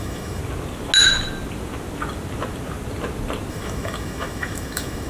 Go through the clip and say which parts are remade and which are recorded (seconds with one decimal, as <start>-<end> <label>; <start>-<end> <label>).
0.0-0.4 remade; 0.4-3.5 recorded; 3.5-5.1 remade